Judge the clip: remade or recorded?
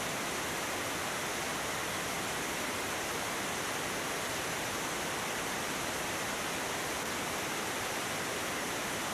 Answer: recorded